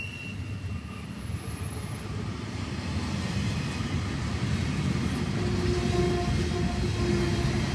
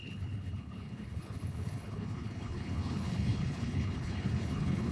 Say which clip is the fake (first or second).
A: second